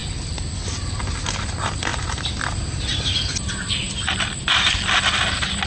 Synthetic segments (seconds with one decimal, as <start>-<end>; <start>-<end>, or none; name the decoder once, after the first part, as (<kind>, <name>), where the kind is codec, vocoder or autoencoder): 2.9-5.2 (vocoder, BigVGAN v2)